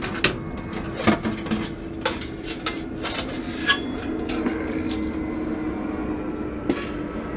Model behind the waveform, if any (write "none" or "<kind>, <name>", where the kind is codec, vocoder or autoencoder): none